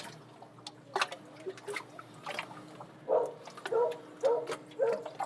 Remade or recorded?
recorded